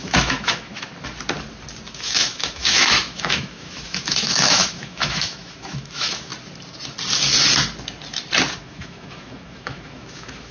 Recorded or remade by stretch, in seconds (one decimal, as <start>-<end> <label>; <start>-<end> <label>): 0.0-0.9 remade; 0.9-1.9 recorded; 1.9-6.3 remade; 6.3-8.6 recorded; 8.6-10.5 remade